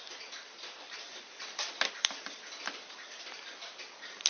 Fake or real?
real